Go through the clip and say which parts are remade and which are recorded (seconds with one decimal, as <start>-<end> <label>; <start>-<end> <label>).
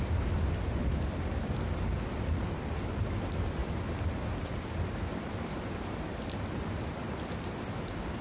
0.0-8.2 recorded